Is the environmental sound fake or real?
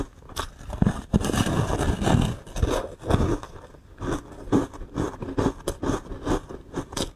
real